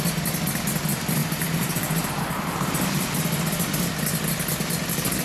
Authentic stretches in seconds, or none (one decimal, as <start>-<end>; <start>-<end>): 0.0-1.2; 3.2-5.2